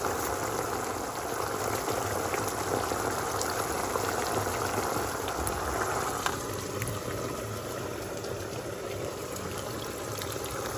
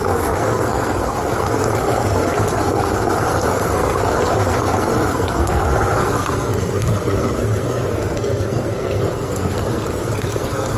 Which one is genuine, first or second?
first